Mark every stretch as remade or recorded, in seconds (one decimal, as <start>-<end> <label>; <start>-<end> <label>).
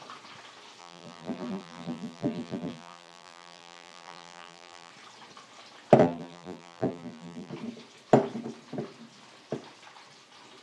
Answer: 0.0-0.8 recorded; 0.8-4.9 remade; 4.9-6.0 recorded; 6.0-7.5 remade; 7.5-10.6 recorded